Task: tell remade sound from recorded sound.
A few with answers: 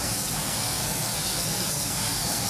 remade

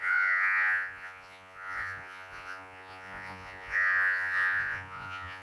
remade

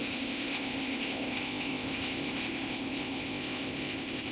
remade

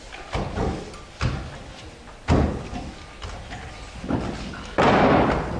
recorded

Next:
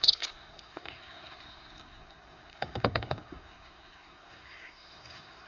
remade